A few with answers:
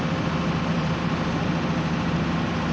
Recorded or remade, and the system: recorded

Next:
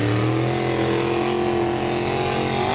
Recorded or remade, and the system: recorded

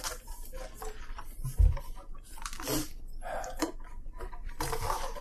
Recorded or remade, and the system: remade, vocoder, BigVGAN v2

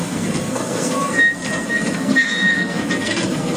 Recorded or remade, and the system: remade, codec, SNAC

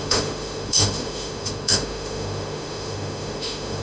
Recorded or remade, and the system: remade, autoencoder, DAC-VAE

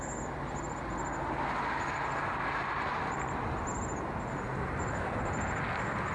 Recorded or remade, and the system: recorded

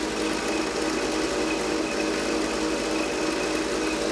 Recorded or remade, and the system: recorded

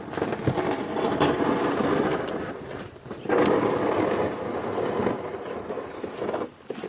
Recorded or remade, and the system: recorded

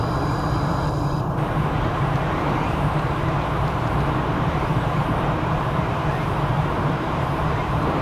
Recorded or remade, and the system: remade, vocoder, BigVGAN v2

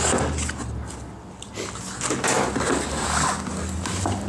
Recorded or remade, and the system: recorded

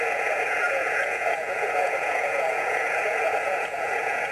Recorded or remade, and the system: remade, vocoder, Vocos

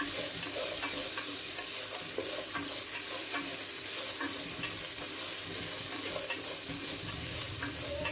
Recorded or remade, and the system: recorded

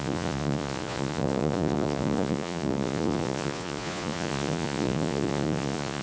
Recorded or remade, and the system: remade, vocoder, Vocos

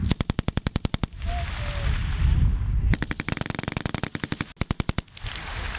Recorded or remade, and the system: recorded